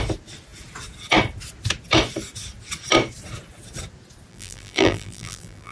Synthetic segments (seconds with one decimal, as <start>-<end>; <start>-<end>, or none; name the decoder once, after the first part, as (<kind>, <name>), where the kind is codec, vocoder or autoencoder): 4.3-5.7 (vocoder, BigVGAN v2)